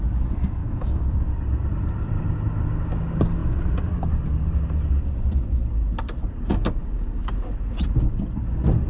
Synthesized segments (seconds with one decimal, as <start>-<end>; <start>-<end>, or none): 0.6-1.3; 6.2-7.3